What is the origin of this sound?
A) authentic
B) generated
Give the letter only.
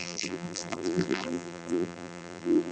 B